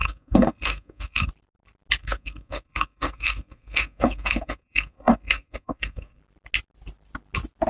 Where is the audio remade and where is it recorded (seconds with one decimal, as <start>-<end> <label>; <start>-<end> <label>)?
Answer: 0.0-1.3 remade; 1.3-2.0 recorded; 2.0-6.2 remade; 6.2-7.7 recorded